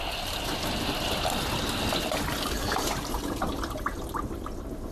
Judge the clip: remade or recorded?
recorded